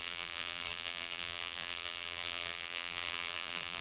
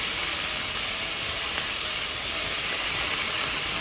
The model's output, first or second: first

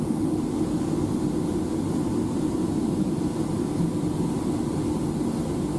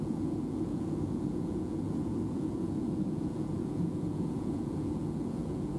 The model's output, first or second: second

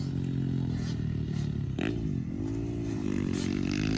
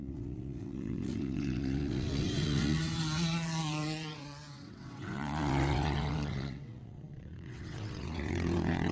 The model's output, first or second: second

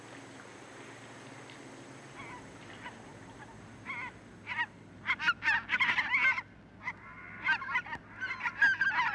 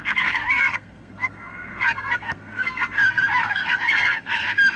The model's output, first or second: second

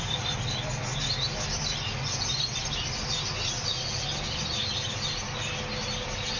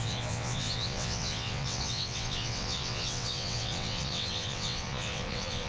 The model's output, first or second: second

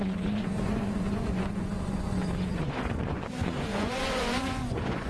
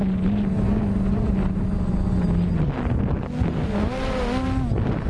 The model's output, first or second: first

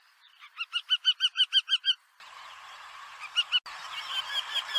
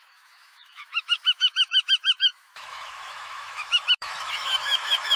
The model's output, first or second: second